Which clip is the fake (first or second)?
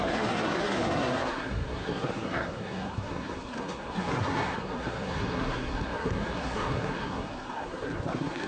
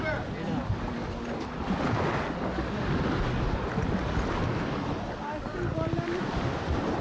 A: first